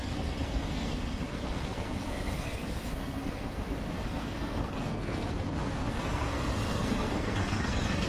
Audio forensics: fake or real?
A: fake